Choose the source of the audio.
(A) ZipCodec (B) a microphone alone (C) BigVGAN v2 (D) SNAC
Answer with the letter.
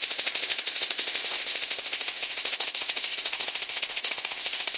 A